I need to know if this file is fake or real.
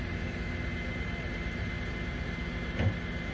real